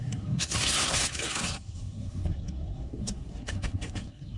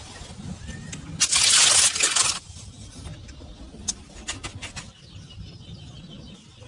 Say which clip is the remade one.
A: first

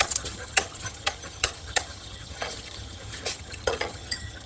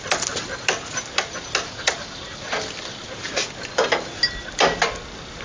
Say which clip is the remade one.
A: first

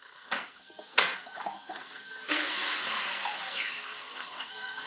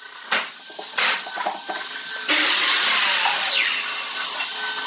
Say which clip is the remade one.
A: first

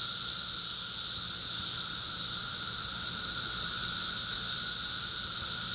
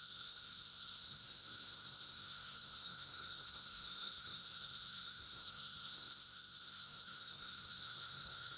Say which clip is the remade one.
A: second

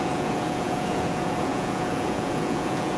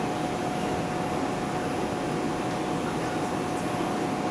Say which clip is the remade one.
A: first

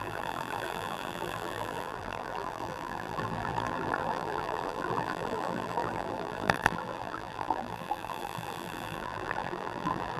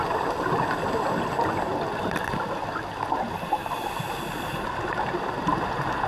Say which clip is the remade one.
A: first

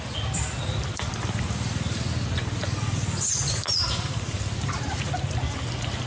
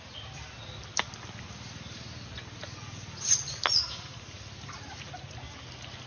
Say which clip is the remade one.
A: first